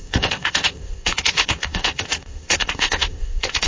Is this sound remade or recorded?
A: remade